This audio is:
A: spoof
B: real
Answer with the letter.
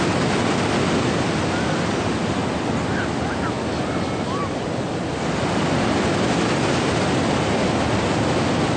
B